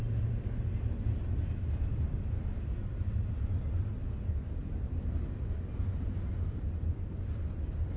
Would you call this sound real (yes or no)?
yes